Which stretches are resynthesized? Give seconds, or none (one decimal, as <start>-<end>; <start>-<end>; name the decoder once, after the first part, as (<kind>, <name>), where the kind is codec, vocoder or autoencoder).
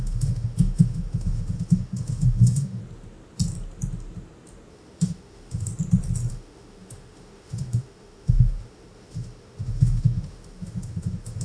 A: 0.0-2.8 (autoencoder, DAC-VAE); 4.7-5.7; 6.3-11.4